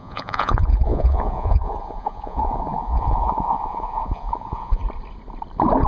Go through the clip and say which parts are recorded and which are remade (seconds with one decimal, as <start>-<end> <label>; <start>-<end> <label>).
0.0-4.8 remade; 4.8-5.9 recorded